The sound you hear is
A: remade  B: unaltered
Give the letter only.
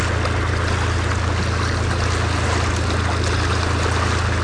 B